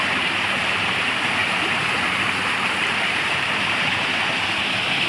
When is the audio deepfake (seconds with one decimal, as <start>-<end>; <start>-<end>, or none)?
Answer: 0.0-1.4; 3.3-5.1